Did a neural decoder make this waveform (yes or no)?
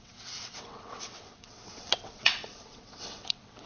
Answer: yes